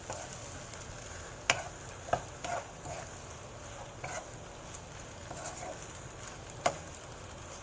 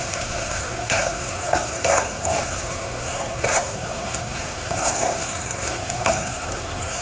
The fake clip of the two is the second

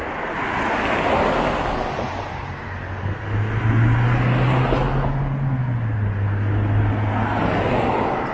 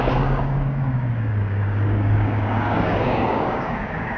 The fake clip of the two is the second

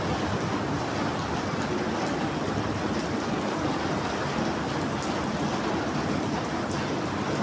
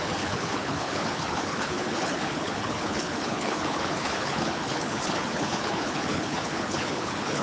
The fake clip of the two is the second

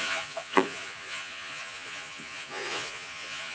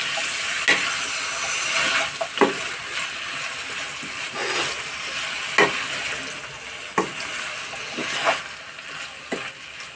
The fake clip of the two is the first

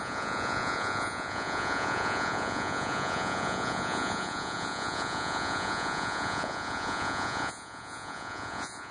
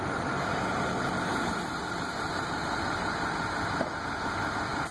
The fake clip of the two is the first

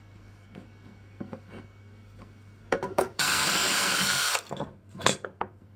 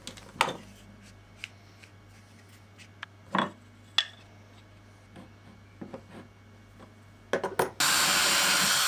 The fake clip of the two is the first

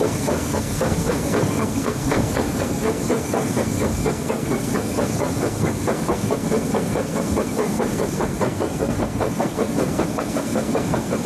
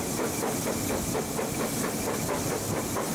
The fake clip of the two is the first